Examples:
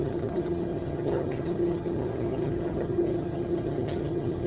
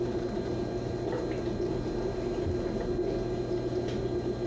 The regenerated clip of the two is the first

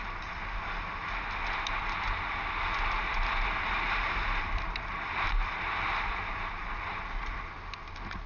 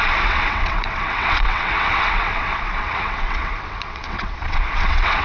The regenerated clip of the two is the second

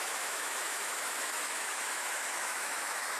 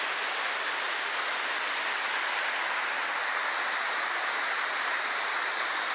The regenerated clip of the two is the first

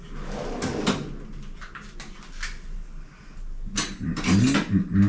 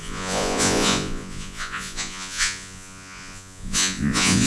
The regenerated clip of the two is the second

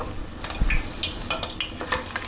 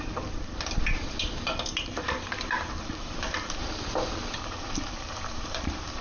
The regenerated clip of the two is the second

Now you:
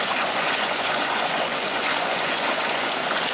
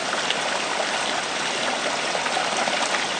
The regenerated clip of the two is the first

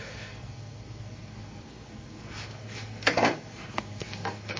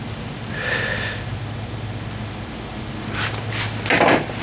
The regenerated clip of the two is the first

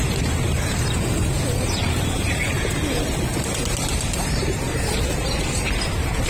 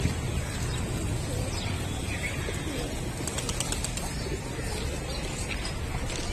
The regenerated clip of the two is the first